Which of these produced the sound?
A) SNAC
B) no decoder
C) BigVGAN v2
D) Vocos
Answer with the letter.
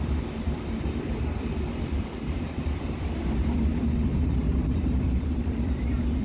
C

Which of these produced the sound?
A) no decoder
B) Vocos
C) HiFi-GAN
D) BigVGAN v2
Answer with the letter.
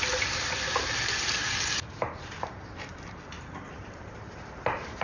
D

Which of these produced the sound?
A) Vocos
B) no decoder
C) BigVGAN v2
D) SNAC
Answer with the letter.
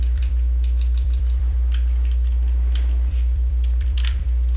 C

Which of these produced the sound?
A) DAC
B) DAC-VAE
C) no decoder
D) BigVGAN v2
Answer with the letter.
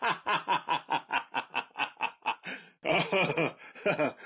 C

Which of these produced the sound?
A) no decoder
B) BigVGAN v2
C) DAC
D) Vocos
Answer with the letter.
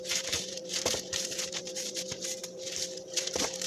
B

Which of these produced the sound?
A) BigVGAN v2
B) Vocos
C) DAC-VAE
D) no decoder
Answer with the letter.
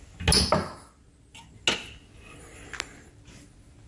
D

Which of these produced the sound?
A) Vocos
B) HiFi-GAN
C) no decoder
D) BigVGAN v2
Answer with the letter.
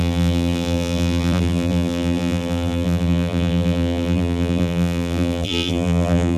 D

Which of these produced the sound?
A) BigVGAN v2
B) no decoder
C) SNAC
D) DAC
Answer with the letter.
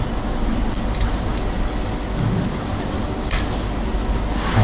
B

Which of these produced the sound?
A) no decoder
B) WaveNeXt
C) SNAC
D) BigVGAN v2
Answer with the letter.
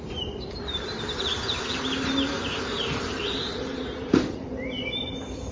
D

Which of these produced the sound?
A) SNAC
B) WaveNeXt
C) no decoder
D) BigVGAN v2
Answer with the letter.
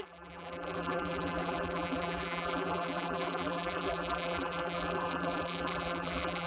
D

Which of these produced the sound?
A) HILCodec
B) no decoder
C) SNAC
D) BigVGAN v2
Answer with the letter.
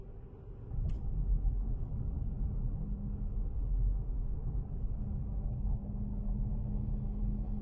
B